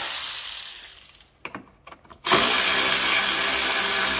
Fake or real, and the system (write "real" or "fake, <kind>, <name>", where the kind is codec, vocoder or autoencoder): real